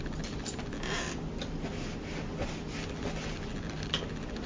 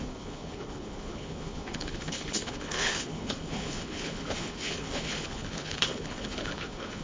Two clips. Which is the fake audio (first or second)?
second